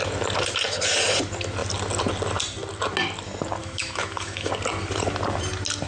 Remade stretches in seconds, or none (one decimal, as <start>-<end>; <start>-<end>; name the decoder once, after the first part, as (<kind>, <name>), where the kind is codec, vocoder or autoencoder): 3.6-4.5 (autoencoder, DAC-VAE)